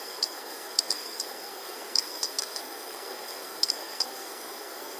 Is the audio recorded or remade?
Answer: remade